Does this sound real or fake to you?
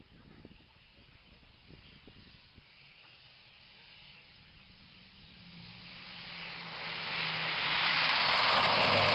real